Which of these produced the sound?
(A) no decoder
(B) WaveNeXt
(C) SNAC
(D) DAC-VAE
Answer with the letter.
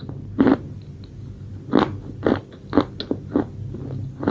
A